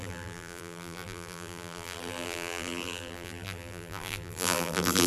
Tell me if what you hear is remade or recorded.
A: remade